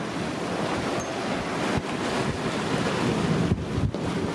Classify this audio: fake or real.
real